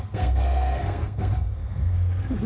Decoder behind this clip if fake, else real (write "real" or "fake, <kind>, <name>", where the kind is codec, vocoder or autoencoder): fake, codec, SNAC